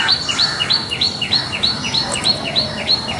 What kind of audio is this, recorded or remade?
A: remade